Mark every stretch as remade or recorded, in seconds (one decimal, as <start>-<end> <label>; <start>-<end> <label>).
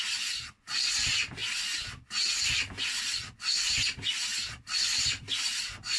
0.0-6.0 recorded